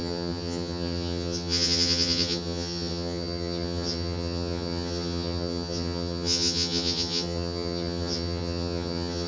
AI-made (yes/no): yes